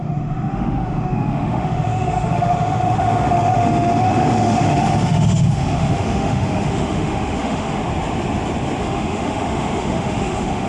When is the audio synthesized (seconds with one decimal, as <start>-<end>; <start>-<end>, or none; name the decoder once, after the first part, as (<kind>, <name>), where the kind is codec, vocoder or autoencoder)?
0.0-7.8 (autoencoder, DAC-VAE); 8.8-10.7